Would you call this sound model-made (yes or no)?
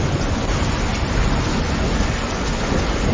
yes